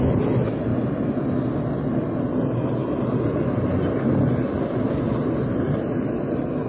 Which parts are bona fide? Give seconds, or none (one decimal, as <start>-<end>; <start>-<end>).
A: 0.0-6.7